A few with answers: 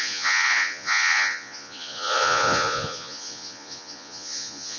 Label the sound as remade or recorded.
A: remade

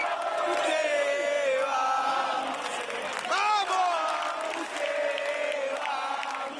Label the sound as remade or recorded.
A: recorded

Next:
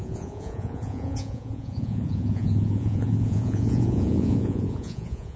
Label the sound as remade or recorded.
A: remade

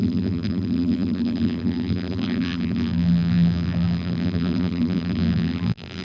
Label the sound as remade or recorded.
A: remade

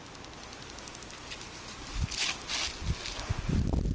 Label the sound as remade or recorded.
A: recorded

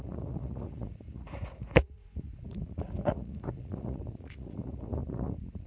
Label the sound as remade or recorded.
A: remade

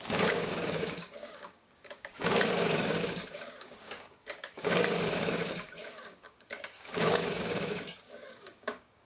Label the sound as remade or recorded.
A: remade